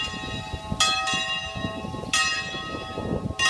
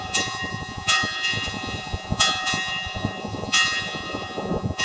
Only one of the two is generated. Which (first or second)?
second